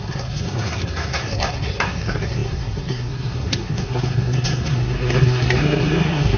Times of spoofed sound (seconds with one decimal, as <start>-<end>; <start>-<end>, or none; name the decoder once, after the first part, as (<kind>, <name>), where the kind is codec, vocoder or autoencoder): 0.0-6.4 (codec, SNAC)